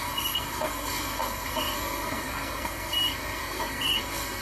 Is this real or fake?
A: fake